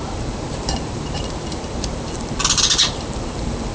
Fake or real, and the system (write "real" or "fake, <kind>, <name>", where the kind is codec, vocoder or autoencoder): fake, vocoder, BigVGAN v2